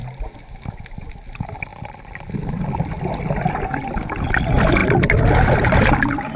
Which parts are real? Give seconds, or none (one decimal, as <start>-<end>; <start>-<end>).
0.0-6.4